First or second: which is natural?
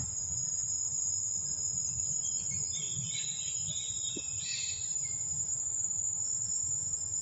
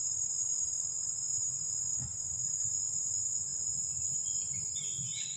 second